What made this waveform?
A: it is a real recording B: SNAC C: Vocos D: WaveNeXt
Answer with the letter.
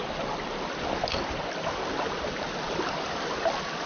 A